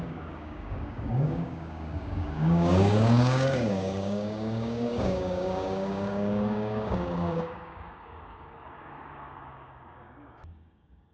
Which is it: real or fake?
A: fake